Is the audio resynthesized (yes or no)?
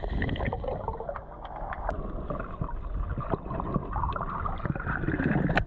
no